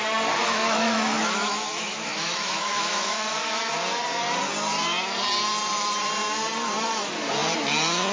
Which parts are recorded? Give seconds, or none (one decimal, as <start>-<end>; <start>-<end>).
0.0-0.4; 3.7-8.1